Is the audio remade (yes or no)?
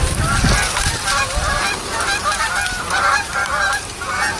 no